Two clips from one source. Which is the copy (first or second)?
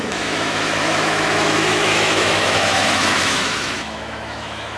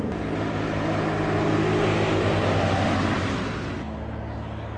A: first